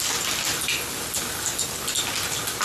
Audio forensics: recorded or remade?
recorded